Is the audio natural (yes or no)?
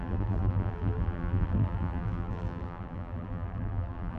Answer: no